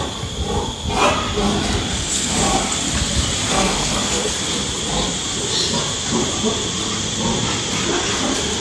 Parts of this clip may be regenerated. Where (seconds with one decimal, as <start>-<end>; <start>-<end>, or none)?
1.9-2.4; 3.5-4.3